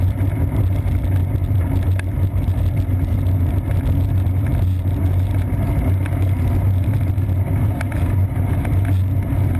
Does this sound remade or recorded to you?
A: recorded